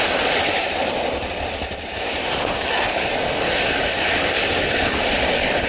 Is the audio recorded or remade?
recorded